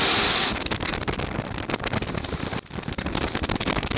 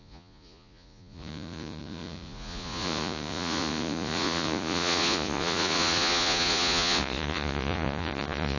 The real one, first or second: first